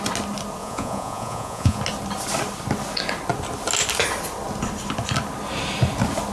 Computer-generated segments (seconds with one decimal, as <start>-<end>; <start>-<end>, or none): 0.6-1.8